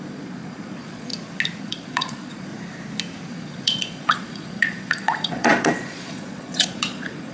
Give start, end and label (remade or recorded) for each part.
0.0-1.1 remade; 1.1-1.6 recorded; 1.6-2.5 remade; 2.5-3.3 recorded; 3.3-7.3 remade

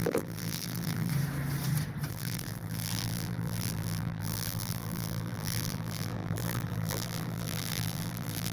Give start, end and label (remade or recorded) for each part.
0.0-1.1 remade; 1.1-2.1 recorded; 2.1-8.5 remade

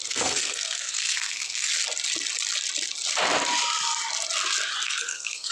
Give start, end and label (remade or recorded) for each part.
0.0-1.7 remade; 1.7-4.9 recorded; 4.9-5.5 remade